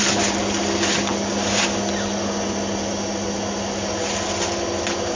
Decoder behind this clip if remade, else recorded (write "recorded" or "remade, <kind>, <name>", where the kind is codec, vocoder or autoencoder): recorded